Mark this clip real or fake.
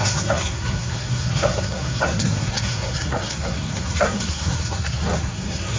fake